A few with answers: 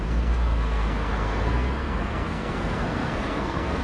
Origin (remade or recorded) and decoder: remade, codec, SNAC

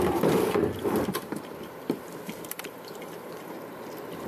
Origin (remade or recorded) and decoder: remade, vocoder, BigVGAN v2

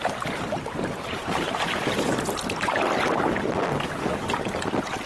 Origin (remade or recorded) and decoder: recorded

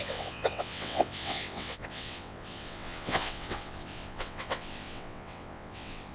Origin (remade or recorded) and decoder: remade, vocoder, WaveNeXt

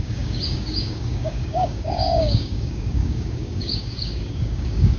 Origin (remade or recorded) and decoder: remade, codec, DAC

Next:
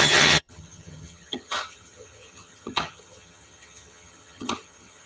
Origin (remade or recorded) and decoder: remade, vocoder, HiFi-GAN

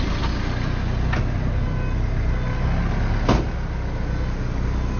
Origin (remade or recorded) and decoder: recorded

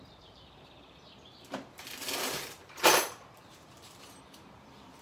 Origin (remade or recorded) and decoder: remade, vocoder, BigVGAN v2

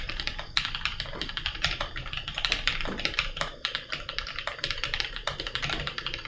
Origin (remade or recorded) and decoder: remade, vocoder, BigVGAN v2